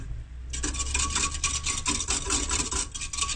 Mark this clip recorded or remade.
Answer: recorded